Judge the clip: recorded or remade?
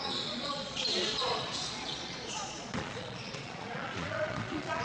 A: remade